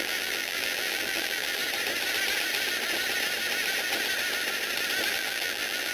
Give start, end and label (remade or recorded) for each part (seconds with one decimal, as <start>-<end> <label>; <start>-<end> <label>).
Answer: 0.0-1.6 remade; 1.6-5.1 recorded; 5.1-5.9 remade